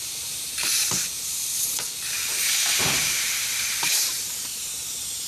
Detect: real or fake fake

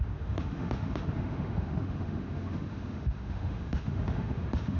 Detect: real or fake fake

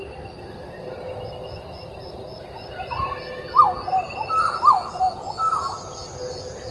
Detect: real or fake real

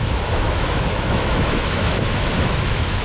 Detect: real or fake fake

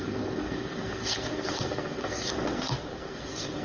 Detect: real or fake fake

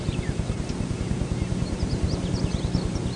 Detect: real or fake real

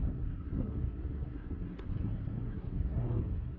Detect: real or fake fake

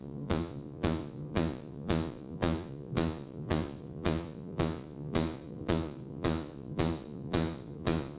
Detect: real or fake fake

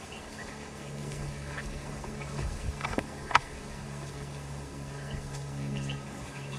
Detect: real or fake fake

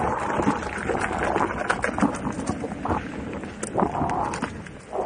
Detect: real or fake real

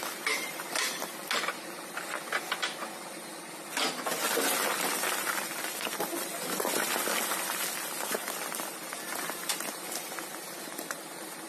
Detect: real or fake real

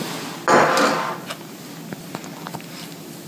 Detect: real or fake real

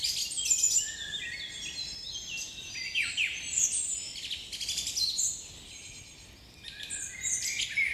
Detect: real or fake real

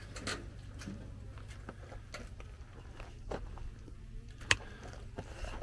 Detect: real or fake real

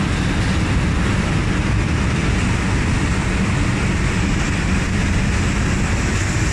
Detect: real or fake real